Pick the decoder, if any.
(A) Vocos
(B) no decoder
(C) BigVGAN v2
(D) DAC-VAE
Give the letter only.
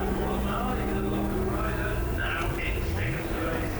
B